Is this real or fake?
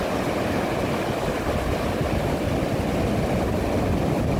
real